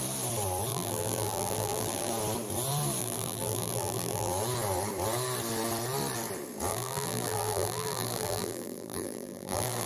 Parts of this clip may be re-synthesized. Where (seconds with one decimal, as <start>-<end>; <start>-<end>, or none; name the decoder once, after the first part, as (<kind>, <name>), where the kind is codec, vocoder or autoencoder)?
0.7-2.1 (vocoder, BigVGAN v2); 3.0-4.3; 6.7-9.9